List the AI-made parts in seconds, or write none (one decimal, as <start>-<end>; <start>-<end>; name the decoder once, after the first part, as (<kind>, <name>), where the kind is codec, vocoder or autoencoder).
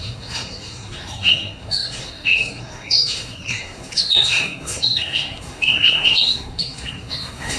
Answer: 0.0-7.6 (codec, SNAC)